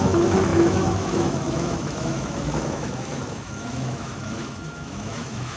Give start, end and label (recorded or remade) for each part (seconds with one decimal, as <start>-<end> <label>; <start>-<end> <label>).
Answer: 0.0-5.6 remade